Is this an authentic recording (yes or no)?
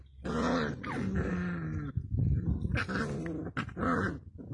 yes